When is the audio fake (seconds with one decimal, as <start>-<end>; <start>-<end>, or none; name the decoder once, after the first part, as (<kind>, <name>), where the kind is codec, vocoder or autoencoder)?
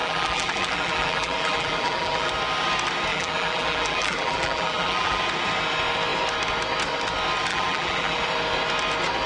0.0-2.3 (vocoder, BigVGAN v2); 3.1-5.2; 7.5-8.2